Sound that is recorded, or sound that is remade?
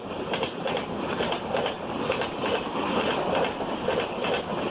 recorded